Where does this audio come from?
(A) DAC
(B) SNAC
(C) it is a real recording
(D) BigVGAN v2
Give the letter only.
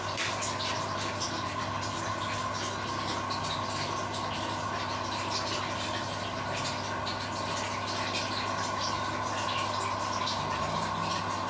C